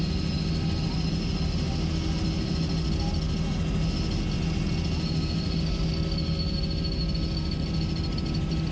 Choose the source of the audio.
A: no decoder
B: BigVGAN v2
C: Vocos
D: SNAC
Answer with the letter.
A